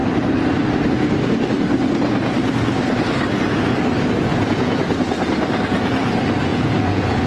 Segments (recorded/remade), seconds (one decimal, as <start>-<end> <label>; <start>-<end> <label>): 0.0-4.3 recorded; 4.3-4.8 remade; 4.8-6.5 recorded; 6.5-7.3 remade